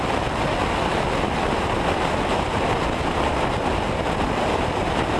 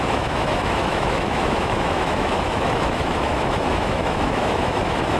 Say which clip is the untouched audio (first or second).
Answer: first